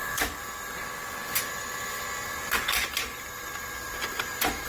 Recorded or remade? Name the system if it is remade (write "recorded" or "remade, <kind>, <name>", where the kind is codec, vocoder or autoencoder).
recorded